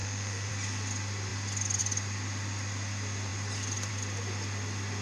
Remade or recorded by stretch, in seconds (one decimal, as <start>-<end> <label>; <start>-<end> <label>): 0.0-0.5 remade; 0.5-5.0 recorded